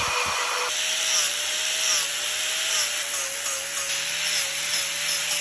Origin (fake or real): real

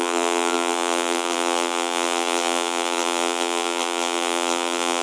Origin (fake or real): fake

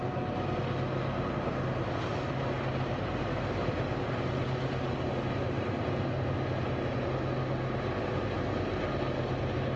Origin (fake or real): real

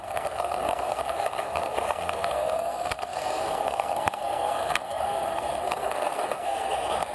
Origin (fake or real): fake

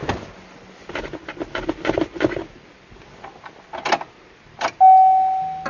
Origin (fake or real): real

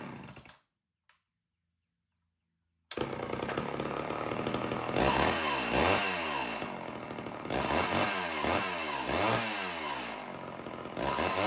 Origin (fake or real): real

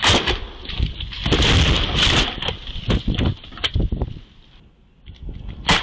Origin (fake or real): real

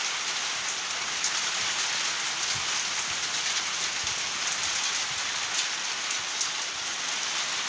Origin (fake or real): real